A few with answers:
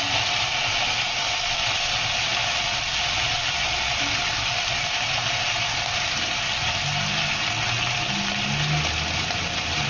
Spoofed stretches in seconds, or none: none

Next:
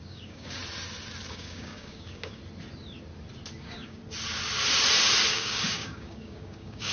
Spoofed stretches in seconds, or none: 0.0-0.6 (codec, DAC); 1.3-2.4; 3.6-4.0; 5.3-6.9

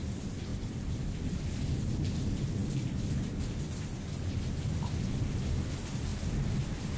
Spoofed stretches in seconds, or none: 0.0-2.6 (vocoder, BigVGAN v2); 5.6-7.0

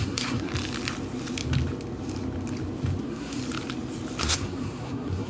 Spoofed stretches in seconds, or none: 0.0-0.5 (codec, SNAC); 3.0-3.4; 4.2-5.3